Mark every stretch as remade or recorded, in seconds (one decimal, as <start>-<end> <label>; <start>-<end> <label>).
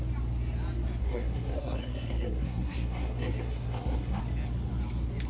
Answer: 0.0-1.0 recorded; 1.0-4.2 remade; 4.2-5.3 recorded